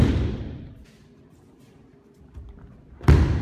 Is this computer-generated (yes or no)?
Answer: no